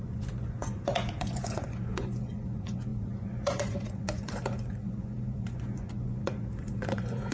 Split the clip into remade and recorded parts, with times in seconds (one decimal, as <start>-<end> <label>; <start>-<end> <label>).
0.0-7.3 remade